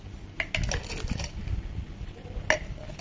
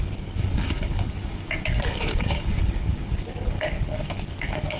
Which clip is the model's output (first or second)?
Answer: second